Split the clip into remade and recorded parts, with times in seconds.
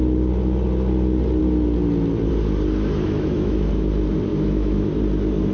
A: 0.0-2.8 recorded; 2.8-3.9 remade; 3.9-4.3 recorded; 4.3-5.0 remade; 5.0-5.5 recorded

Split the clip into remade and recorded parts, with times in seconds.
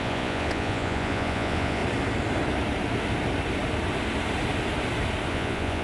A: 0.0-1.8 remade; 1.8-5.3 recorded; 5.3-5.8 remade